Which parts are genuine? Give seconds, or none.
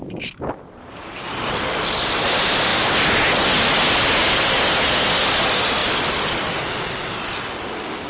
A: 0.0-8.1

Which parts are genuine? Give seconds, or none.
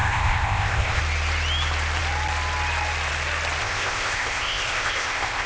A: 1.0-3.6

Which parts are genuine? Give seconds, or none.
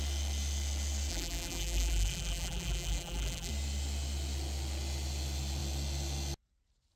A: 0.0-1.1; 3.5-7.0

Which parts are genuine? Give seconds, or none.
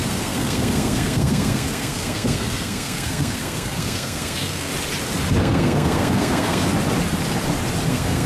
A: 4.7-5.4; 6.7-7.9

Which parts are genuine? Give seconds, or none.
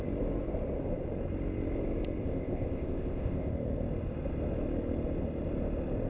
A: 0.0-2.2; 3.5-6.1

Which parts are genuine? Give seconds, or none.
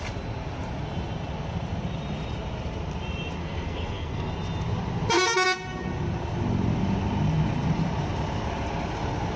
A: 0.0-3.4; 4.3-9.4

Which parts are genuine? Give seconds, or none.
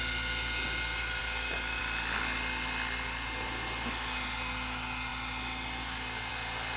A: 0.0-6.8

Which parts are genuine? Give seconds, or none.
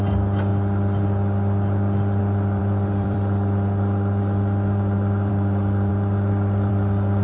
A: 0.0-0.5; 2.2-2.6; 5.3-5.9; 6.7-7.2